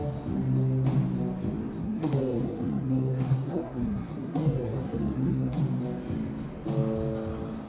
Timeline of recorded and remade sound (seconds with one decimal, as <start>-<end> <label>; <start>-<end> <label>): 0.0-1.8 recorded; 1.8-5.6 remade; 5.6-7.7 recorded